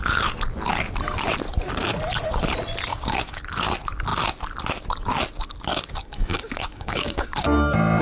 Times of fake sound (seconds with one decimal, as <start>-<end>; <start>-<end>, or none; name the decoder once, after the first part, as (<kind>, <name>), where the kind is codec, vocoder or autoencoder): 2.9-3.4 (codec, DAC); 5.7-7.3